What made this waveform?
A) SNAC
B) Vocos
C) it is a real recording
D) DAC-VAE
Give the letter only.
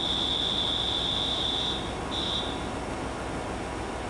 C